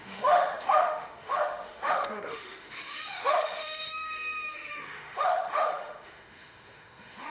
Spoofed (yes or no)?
yes